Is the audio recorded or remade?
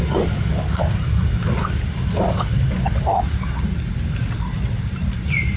recorded